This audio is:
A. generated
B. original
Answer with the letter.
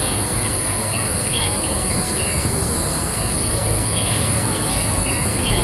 A